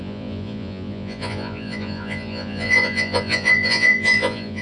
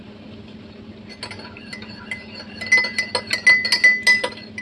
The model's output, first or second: first